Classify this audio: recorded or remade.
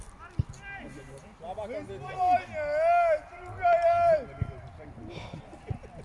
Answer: recorded